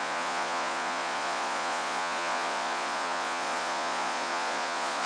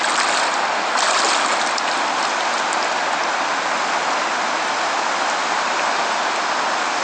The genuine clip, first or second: second